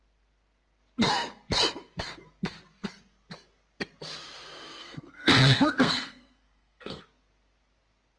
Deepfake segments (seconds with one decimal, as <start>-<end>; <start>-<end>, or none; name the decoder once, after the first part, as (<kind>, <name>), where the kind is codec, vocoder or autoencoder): 4.8-7.0 (codec, SNAC)